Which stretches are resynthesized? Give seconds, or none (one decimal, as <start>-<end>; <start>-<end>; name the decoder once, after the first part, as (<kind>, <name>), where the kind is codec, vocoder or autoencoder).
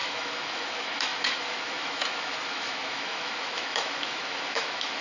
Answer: 0.0-5.0 (autoencoder, DAC-VAE)